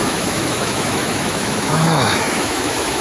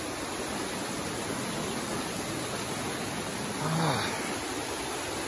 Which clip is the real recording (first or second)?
second